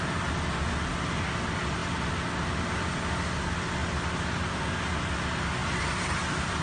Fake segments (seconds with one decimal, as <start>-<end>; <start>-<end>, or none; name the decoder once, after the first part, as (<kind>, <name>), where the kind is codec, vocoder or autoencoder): none